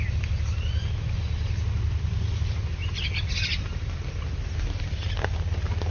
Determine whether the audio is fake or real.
real